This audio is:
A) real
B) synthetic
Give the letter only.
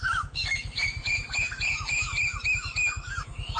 B